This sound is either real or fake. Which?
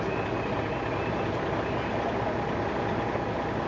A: real